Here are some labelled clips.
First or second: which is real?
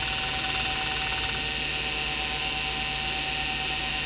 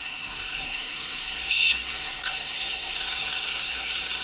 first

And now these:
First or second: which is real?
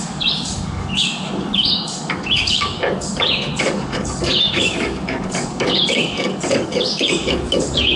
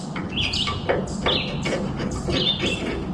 second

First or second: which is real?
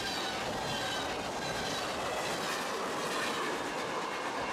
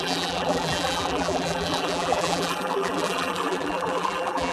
first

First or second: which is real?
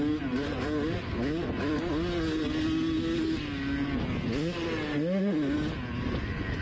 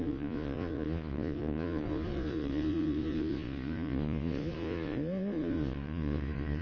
first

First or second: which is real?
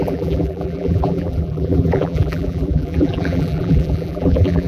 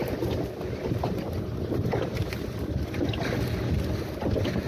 second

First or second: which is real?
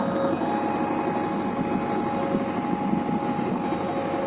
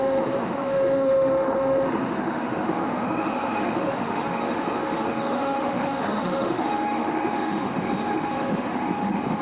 first